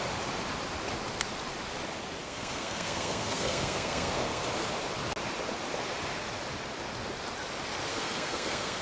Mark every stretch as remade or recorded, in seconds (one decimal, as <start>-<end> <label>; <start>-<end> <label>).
0.0-2.2 recorded; 2.2-4.4 remade; 4.4-7.9 recorded; 7.9-8.8 remade